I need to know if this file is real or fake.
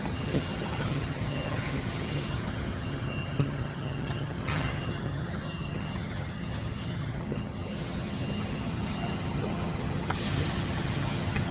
fake